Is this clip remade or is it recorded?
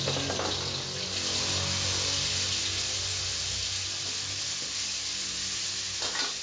recorded